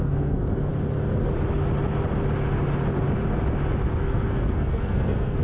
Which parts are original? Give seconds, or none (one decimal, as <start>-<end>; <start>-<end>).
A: 0.7-3.9